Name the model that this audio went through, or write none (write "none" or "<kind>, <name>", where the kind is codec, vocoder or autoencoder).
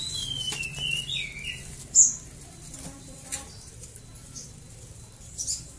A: none